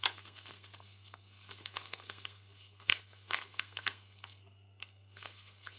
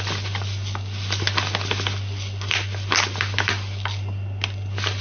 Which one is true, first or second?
second